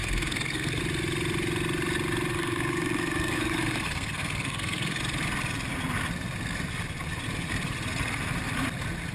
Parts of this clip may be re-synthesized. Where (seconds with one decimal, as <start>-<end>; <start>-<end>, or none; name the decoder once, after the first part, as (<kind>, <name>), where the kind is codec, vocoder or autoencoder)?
0.0-0.8 (codec, SNAC); 2.3-5.0